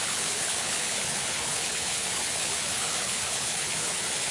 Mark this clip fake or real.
fake